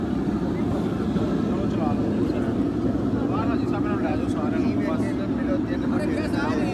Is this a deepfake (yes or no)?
no